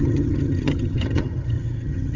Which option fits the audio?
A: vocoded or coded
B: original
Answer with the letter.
A